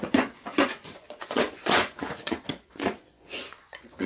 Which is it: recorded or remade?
remade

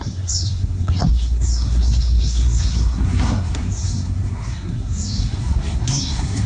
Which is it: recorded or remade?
remade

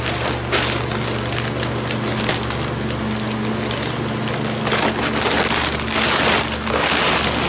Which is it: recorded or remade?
recorded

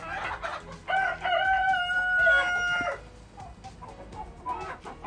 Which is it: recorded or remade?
recorded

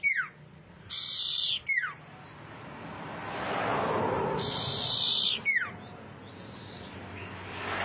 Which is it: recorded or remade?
recorded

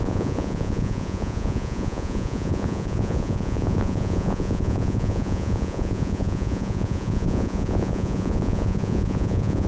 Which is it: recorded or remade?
remade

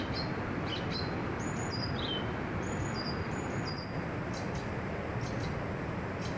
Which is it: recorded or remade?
recorded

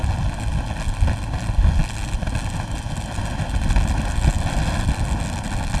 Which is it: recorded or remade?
recorded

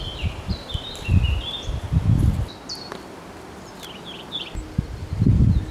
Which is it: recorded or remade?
remade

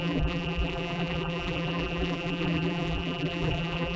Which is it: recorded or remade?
remade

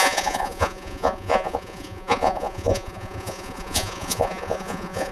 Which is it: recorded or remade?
remade